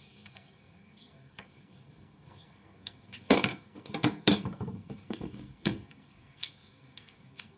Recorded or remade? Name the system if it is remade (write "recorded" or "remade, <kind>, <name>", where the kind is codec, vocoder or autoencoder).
remade, codec, SNAC